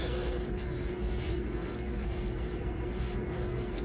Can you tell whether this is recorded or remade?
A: remade